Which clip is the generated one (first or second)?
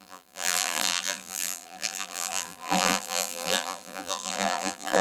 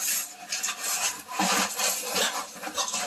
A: first